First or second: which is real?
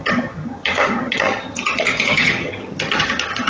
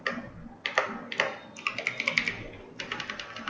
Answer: second